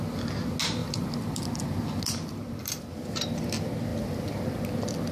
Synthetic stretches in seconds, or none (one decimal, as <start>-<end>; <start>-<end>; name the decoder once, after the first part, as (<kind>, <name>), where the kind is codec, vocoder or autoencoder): 0.8-3.4 (vocoder, BigVGAN v2); 3.9-5.1

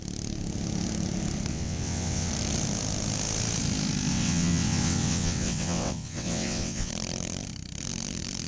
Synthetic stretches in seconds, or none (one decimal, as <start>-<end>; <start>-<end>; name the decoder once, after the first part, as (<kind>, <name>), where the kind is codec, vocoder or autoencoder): 1.5-2.3 (vocoder, WaveNeXt); 4.1-6.9